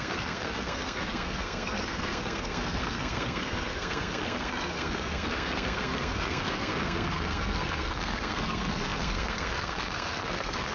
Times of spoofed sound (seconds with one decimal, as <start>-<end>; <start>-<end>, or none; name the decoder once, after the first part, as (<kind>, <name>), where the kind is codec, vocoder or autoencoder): 0.0-10.7 (codec, SNAC)